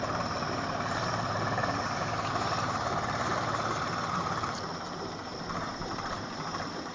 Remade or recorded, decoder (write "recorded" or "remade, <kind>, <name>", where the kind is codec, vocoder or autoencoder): remade, vocoder, BigVGAN v2